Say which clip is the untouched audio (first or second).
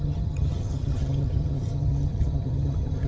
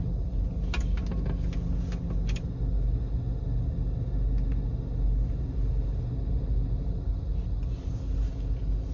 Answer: second